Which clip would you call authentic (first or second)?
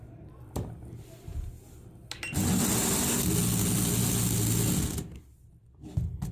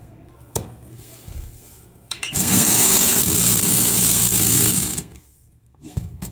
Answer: first